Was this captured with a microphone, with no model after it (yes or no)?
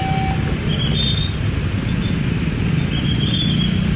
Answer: yes